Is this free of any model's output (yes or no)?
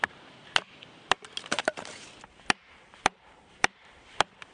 no